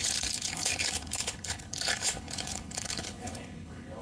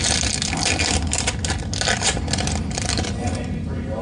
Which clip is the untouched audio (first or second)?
second